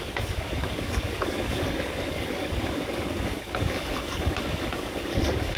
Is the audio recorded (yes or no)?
no